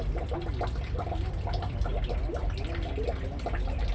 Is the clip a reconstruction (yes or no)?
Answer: no